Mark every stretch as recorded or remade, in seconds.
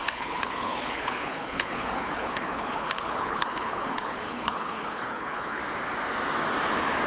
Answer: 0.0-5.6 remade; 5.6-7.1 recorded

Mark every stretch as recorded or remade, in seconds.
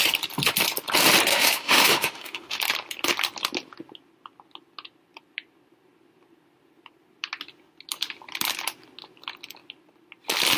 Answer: 0.0-1.3 recorded; 1.3-2.6 remade; 2.6-10.6 recorded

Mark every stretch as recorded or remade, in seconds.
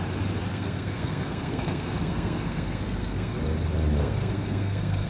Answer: 0.0-0.5 recorded; 0.5-3.4 remade; 3.4-4.0 recorded; 4.0-5.1 remade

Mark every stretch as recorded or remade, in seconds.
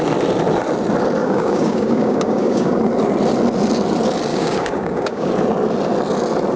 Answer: 0.0-1.2 recorded; 1.2-2.8 remade; 2.8-4.3 recorded; 4.3-5.3 remade; 5.3-6.6 recorded